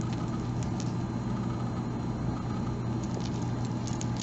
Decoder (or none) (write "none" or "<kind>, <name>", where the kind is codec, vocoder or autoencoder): none